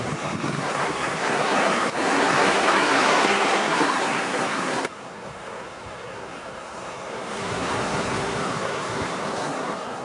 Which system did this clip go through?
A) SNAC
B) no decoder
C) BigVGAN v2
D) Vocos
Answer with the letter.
A